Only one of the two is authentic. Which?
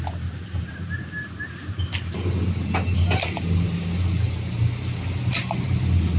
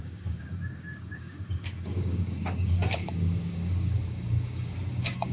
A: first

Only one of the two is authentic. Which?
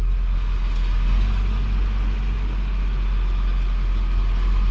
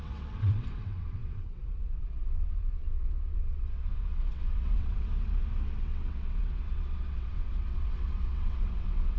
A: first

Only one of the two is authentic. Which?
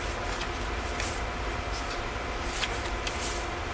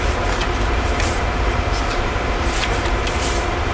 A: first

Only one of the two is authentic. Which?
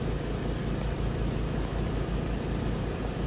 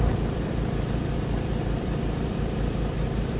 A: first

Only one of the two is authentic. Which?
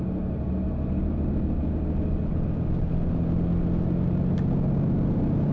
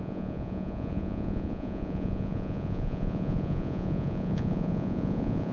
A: first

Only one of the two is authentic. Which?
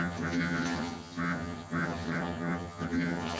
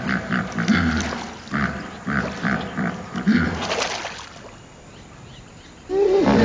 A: second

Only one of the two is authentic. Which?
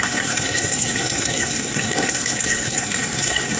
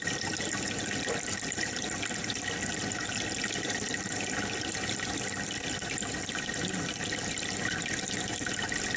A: second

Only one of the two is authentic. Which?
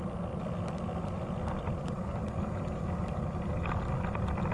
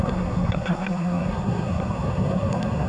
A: first